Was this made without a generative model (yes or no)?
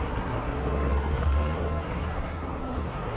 no